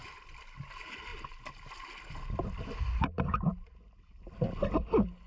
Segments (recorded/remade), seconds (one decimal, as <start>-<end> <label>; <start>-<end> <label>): 0.0-5.3 recorded